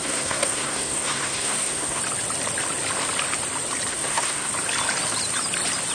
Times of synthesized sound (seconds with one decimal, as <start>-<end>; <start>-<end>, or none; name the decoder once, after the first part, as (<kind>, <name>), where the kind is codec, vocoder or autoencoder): 0.0-2.0 (codec, SNAC); 3.9-4.5

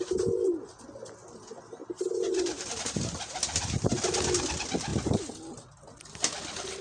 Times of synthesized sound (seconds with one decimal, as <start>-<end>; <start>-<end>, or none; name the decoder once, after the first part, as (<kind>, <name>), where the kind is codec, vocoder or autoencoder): none

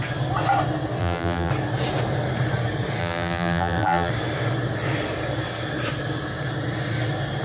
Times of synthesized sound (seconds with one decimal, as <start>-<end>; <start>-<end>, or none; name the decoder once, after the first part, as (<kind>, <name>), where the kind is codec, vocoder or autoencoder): 1.0-1.5 (vocoder, BigVGAN v2); 3.0-4.1

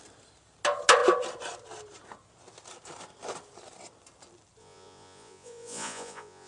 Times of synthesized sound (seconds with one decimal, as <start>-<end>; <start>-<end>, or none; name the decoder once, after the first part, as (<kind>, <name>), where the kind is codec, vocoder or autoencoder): 4.6-6.5 (vocoder, Vocos)

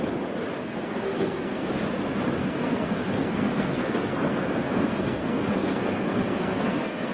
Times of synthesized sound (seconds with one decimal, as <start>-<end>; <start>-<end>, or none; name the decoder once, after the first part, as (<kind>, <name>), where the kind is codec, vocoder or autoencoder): 0.6-1.7 (codec, SNAC); 2.4-7.1